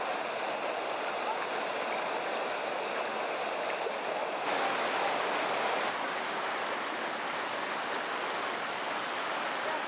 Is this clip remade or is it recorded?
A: recorded